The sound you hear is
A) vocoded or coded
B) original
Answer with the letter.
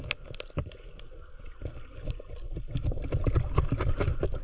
B